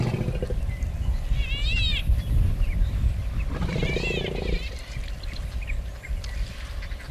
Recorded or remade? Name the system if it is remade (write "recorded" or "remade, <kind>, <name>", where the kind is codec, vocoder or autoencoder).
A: recorded